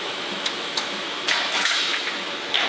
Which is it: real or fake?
fake